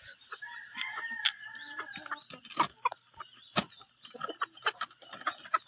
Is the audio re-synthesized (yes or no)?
no